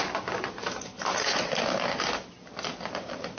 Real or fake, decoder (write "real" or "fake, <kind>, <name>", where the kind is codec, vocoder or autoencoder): real